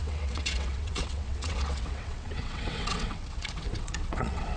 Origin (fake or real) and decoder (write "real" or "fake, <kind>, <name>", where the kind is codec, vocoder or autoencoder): fake, vocoder, WaveNeXt